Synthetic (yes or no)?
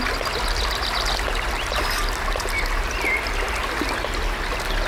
no